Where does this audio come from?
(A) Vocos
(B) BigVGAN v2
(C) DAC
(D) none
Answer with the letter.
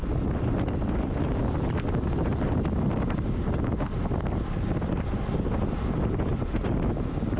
D